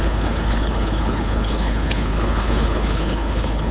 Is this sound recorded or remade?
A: remade